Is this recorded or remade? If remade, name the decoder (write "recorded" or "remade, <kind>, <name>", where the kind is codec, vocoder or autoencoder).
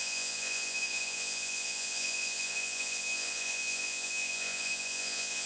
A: remade, vocoder, Vocos